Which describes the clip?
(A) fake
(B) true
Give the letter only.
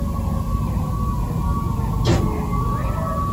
B